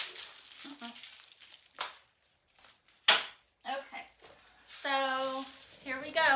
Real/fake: real